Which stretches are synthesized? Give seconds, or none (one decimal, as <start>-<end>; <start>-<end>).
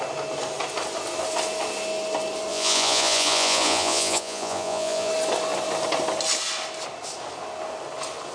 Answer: 2.5-5.1